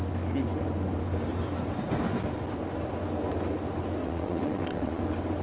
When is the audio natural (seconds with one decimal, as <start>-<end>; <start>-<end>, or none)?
0.0-4.0; 5.0-5.4